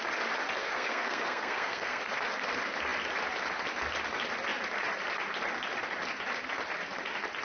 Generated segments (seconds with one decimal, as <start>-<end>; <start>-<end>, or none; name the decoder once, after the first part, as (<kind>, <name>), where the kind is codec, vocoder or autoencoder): 0.6-2.0 (codec, SNAC)